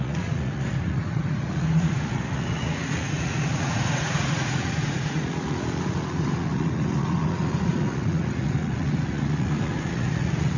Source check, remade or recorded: remade